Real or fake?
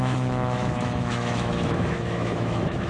fake